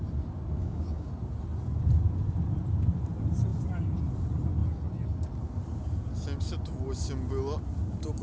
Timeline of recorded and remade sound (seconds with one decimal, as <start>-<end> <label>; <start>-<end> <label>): 0.0-0.6 recorded; 0.6-1.1 remade; 1.1-8.2 recorded

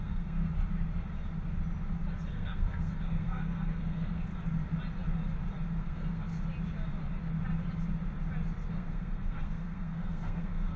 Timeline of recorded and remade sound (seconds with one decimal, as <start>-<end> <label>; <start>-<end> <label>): 0.0-0.5 remade; 0.5-2.3 recorded; 2.3-4.3 remade; 4.3-5.8 recorded; 5.8-6.3 remade; 6.3-8.7 recorded; 8.7-10.8 remade

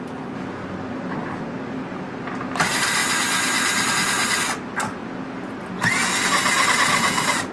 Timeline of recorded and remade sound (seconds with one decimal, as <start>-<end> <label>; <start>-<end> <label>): 0.0-7.5 recorded

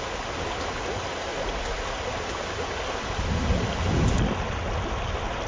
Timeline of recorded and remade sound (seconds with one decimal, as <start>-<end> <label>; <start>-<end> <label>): 0.0-5.5 recorded

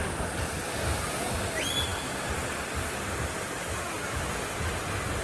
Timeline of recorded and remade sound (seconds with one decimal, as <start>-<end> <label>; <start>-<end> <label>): 0.0-5.2 recorded

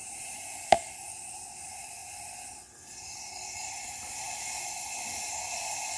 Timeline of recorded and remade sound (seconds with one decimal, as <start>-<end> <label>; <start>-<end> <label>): 0.0-0.5 remade; 0.5-6.0 recorded

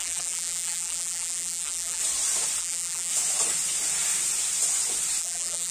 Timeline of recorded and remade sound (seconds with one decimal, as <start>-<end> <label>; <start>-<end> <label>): 0.0-2.0 remade; 2.0-2.6 recorded; 2.6-3.1 remade; 3.1-5.2 recorded; 5.2-5.7 remade